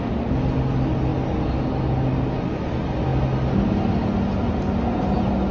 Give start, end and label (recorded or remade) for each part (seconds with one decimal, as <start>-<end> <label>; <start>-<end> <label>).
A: 0.0-5.5 recorded